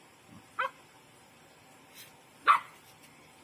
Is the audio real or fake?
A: real